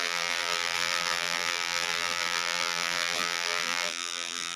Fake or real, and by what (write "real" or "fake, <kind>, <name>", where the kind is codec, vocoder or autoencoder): fake, vocoder, BigVGAN v2